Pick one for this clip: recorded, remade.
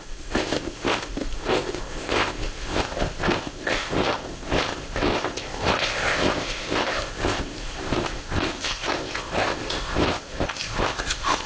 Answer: remade